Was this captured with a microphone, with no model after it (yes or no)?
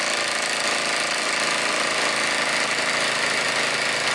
yes